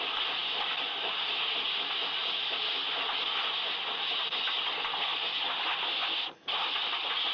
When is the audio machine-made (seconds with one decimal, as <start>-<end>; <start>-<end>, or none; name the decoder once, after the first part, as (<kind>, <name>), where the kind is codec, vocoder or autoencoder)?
none